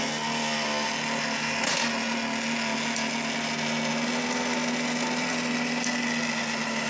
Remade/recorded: recorded